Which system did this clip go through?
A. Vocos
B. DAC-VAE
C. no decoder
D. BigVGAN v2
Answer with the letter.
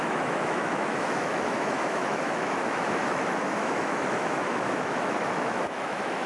B